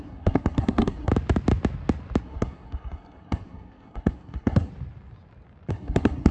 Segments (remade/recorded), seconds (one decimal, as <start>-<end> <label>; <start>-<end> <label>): 0.0-1.1 remade; 1.1-2.2 recorded; 2.2-4.7 remade; 4.7-5.7 recorded; 5.7-6.3 remade